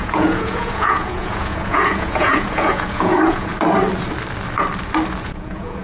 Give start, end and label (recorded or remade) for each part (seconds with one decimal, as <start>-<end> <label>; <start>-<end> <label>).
0.0-3.5 remade; 3.5-5.2 recorded; 5.2-5.8 remade